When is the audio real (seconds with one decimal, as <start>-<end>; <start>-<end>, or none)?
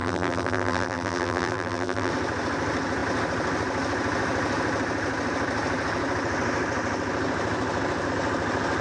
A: 2.1-8.8